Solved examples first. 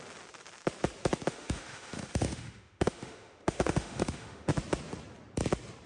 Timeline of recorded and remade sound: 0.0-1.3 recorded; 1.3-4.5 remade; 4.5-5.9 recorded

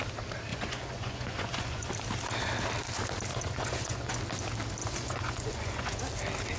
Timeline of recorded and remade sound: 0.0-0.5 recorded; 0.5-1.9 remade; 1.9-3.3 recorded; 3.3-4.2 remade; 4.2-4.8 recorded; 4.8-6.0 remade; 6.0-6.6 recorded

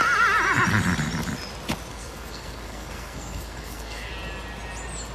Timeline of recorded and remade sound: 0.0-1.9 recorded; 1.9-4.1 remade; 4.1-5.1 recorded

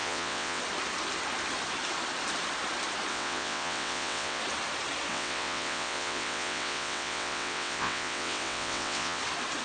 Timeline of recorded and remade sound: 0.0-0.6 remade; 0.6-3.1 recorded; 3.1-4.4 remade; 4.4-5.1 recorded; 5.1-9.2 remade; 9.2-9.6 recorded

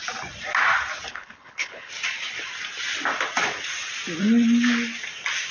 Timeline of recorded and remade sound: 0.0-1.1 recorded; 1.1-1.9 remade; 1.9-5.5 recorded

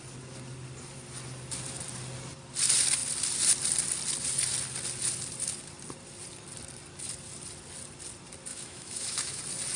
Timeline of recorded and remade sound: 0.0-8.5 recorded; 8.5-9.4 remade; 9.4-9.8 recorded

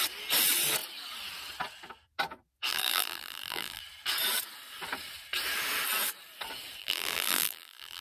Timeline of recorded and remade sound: 0.0-2.7 recorded; 2.7-3.8 remade; 3.8-6.8 recorded; 6.8-8.0 remade

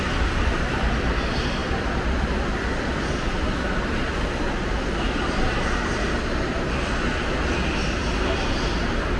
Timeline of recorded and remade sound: 0.0-9.2 recorded